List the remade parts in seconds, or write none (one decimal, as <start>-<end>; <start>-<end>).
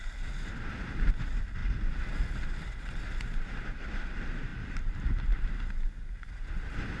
4.5-5.0